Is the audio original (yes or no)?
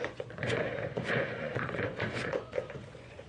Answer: no